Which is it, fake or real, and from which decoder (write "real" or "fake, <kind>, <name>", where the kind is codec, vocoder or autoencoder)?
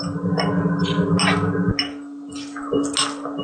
real